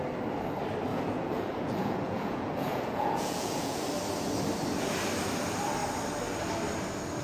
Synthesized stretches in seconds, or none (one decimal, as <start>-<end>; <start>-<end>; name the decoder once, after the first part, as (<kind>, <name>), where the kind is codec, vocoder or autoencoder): 0.9-3.8 (vocoder, Vocos)